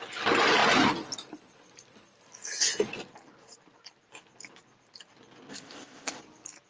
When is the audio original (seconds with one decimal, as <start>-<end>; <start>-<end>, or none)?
0.0-5.5; 6.2-6.7